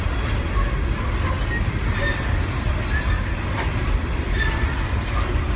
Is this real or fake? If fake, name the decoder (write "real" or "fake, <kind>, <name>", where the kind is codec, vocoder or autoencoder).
real